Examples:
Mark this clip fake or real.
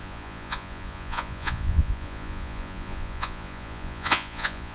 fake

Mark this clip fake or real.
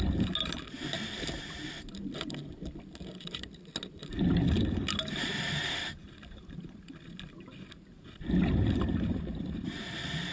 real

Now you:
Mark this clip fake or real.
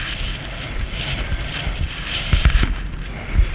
real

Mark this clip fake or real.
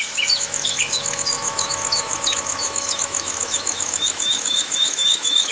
fake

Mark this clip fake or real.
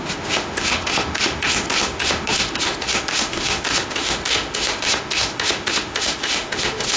fake